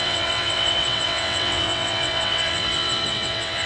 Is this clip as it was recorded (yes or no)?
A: no